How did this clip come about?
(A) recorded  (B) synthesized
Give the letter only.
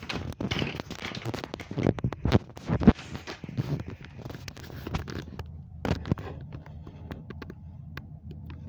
A